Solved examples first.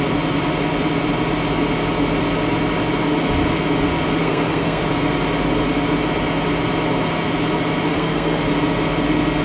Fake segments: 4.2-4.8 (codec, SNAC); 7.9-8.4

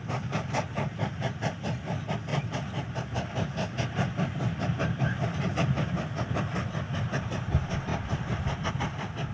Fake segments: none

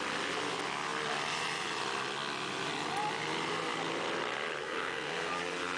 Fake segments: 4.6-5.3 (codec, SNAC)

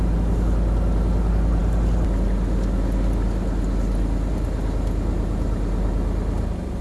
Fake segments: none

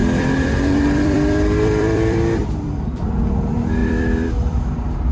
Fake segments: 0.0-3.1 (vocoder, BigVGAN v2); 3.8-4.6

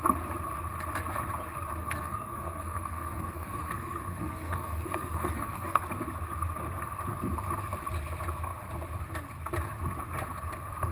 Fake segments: 1.8-5.8 (codec, SNAC)